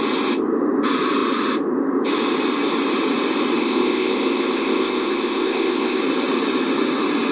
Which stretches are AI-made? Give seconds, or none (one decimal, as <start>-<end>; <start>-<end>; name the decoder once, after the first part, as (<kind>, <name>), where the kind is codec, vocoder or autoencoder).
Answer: 3.6-6.0 (codec, ZipCodec)